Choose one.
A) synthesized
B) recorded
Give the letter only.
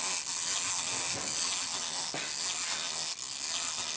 B